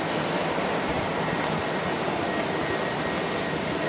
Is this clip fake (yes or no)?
no